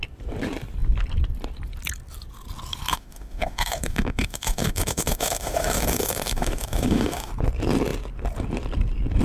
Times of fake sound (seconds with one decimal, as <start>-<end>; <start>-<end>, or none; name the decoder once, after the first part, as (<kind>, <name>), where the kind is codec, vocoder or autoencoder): 2.9-7.3 (autoencoder, DAC-VAE)